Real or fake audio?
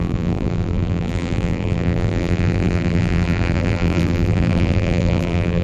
fake